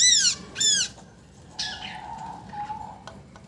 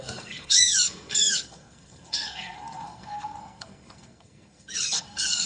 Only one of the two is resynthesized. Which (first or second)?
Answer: second